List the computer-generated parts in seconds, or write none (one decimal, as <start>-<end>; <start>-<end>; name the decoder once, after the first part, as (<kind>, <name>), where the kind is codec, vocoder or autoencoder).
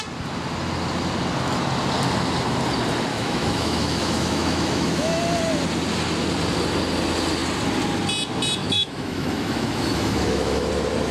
3.1-5.2 (autoencoder, DAC-VAE); 8.6-10.7